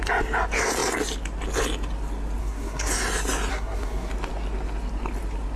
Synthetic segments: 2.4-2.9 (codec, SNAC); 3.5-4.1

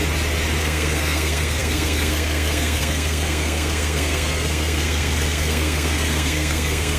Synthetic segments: 0.6-7.0 (codec, SNAC)

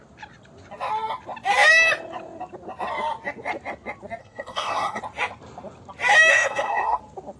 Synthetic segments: 4.2-5.0 (codec, SNAC); 6.3-7.0

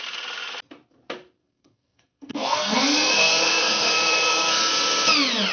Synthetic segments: 1.4-4.7 (codec, SNAC)